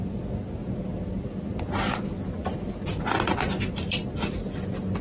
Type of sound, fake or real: real